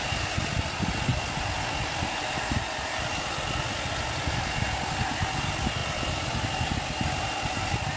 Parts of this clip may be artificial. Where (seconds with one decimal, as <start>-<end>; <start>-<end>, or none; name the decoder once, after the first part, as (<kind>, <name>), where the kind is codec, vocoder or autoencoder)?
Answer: none